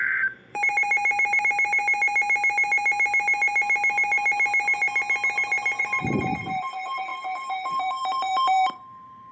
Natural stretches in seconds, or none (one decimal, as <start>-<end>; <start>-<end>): 1.8-5.8